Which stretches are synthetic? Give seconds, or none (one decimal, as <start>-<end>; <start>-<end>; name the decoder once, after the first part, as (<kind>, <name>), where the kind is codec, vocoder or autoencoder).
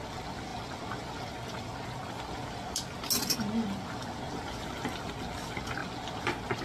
none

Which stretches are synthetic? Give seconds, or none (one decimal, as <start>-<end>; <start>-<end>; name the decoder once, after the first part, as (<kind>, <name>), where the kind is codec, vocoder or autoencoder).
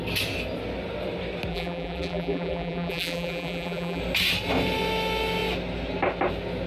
1.5-4.0 (vocoder, BigVGAN v2)